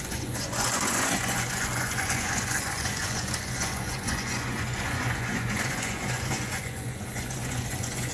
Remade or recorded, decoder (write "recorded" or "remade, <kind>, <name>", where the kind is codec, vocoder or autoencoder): remade, vocoder, Vocos